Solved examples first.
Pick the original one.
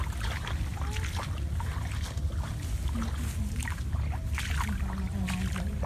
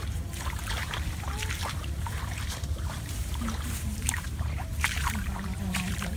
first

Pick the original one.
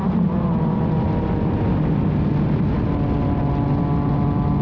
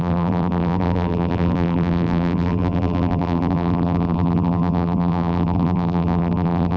first